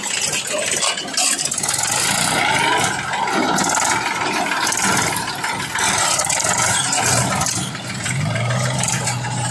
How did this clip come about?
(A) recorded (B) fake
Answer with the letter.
A